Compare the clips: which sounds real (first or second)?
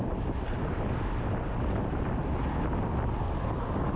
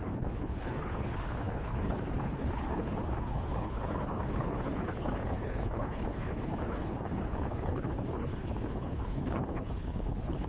first